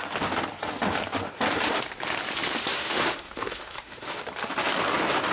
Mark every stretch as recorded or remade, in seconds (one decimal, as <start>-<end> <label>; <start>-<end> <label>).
0.0-2.7 recorded; 2.7-4.2 remade; 4.2-5.3 recorded